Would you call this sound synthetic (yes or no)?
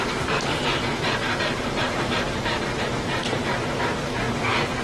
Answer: yes